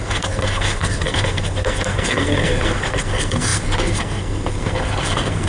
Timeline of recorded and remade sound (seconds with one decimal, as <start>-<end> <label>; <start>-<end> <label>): 0.0-5.5 remade